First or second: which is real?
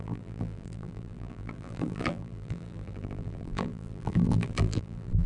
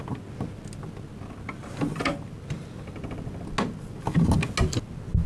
second